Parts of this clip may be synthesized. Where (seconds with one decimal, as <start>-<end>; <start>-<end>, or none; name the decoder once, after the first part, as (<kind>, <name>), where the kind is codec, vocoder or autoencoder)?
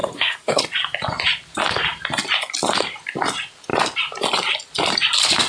0.0-0.6 (codec, SNAC)